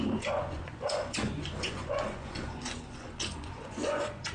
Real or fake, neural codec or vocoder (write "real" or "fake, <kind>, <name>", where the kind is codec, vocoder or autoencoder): fake, vocoder, Vocos